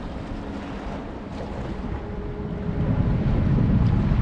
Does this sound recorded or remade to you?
recorded